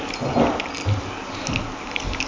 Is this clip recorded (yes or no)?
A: yes